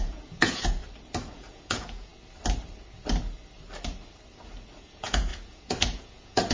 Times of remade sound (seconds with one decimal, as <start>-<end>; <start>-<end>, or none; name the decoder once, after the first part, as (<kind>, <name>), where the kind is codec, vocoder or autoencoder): 0.0-0.8 (vocoder, Vocos); 1.3-2.1; 4.8-6.5